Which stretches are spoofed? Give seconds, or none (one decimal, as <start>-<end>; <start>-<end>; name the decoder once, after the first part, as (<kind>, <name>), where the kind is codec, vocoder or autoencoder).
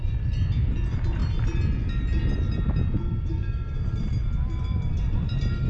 0.0-1.2 (vocoder, BigVGAN v2); 4.6-5.7